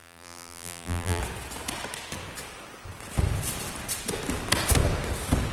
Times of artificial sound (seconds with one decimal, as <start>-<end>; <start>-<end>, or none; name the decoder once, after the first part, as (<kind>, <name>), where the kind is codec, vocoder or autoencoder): 0.0-1.2 (vocoder, BigVGAN v2)